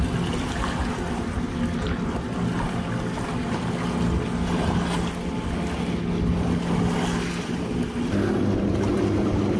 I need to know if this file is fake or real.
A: real